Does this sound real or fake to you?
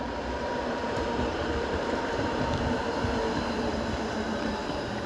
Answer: fake